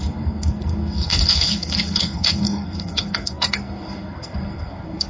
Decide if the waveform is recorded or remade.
remade